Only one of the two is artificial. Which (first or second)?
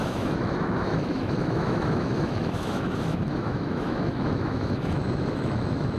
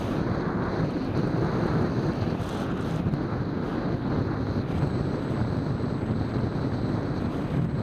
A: first